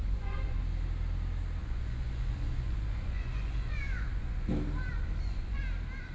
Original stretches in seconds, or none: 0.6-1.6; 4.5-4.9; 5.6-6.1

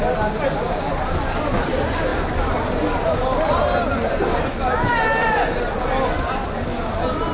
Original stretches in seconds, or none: 0.0-7.3

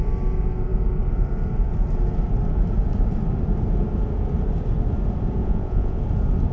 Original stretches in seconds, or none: 0.0-5.4; 6.0-6.5